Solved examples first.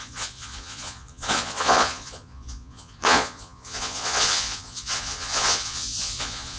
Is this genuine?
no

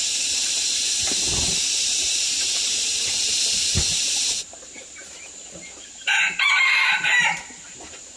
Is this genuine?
no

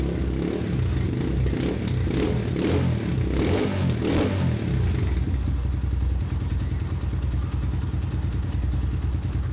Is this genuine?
yes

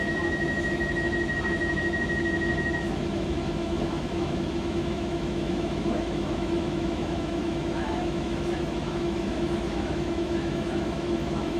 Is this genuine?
no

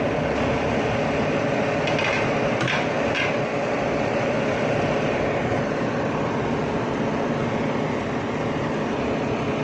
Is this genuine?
yes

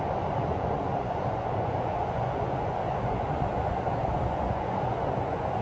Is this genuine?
no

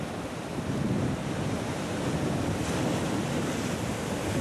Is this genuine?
yes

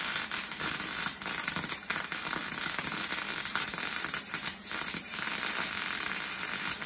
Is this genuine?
no